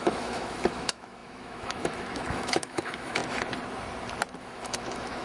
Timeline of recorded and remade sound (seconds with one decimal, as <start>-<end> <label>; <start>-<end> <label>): 0.0-3.2 remade; 3.2-4.4 recorded; 4.4-5.2 remade